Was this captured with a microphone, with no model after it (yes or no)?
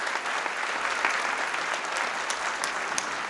yes